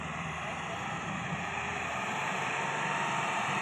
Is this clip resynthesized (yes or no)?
yes